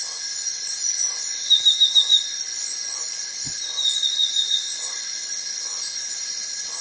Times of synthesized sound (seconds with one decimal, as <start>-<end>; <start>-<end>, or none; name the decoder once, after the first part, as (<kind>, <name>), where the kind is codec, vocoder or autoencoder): 2.1-3.2 (vocoder, Vocos)